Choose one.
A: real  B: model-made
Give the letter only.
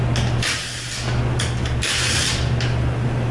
A